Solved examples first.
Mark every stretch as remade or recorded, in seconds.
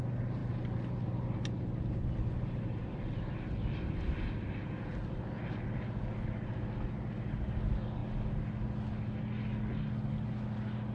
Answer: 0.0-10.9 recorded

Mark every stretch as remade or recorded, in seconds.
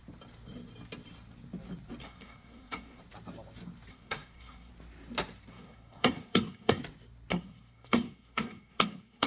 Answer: 0.0-2.0 recorded; 2.0-3.0 remade; 3.0-3.9 recorded; 3.9-4.7 remade; 4.7-5.5 recorded; 5.5-6.8 remade; 6.8-7.3 recorded; 7.3-9.3 remade